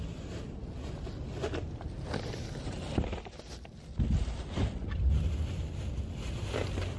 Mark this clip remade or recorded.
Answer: recorded